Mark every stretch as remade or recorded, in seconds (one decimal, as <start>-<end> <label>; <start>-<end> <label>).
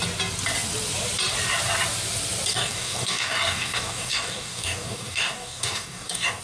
0.0-2.5 recorded; 2.5-6.4 remade